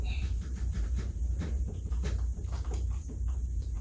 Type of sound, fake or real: fake